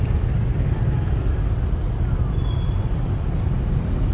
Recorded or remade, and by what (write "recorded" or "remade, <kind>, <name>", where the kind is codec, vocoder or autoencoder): recorded